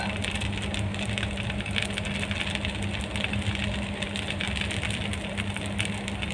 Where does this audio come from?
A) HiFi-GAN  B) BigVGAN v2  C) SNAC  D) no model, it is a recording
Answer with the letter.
D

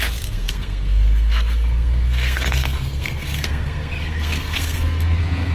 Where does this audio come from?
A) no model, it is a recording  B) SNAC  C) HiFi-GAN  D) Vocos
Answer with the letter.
B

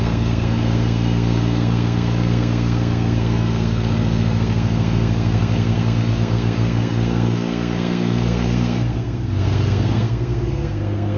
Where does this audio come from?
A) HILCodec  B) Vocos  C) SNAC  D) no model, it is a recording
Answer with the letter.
C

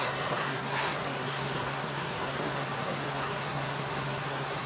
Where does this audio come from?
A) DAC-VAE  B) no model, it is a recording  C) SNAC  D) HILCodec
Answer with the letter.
C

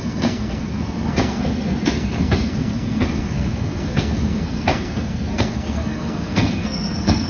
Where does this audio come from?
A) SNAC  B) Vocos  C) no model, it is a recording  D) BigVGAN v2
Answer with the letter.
A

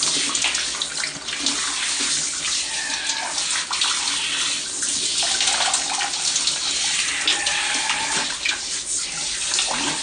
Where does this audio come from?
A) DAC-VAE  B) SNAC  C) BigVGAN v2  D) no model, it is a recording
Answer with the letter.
D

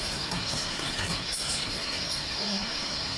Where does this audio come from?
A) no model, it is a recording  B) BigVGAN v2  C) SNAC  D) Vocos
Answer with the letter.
C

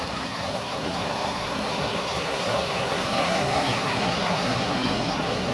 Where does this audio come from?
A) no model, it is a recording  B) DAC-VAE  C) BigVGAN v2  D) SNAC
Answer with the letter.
D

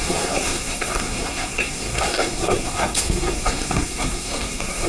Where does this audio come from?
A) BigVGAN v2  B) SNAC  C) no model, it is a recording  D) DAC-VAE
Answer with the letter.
B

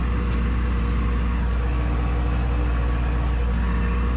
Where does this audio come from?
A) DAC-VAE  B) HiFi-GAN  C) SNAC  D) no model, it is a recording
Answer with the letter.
D